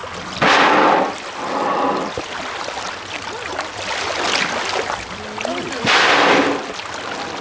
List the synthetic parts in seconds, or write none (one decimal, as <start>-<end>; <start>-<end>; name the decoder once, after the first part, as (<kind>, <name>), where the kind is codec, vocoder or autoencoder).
none